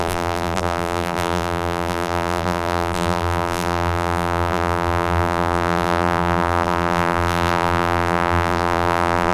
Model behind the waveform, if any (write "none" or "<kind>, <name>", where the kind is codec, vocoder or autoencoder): vocoder, BigVGAN v2